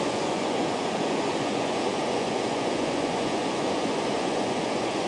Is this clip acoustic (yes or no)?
no